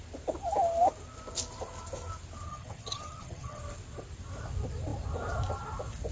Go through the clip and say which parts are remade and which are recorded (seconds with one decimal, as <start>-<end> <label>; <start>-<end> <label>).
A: 0.0-2.5 recorded; 2.5-3.6 remade; 3.6-6.1 recorded